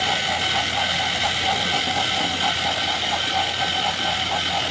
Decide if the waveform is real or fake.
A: real